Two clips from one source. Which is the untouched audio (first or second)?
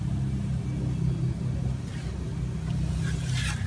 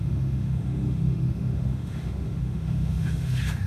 first